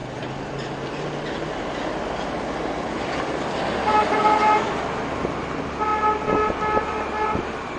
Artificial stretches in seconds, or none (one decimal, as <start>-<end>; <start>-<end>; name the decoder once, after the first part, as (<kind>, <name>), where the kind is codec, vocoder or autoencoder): none